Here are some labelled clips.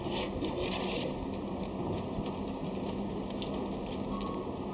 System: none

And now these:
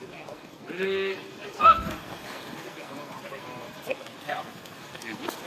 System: codec, SNAC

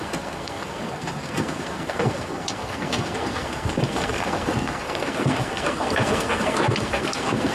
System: codec, SNAC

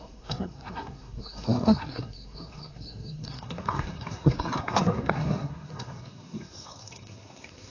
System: codec, SNAC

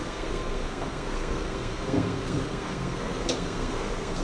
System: codec, SNAC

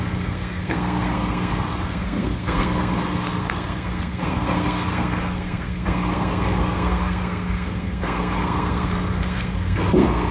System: codec, SNAC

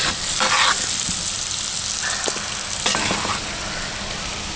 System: none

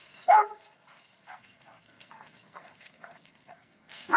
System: codec, SNAC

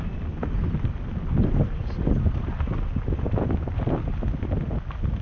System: none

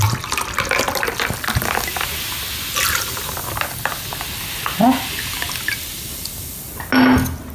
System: none